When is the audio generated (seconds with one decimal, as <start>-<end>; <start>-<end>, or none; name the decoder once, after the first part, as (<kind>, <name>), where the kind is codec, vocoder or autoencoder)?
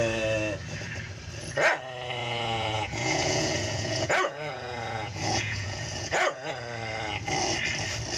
2.2-6.5 (vocoder, Vocos)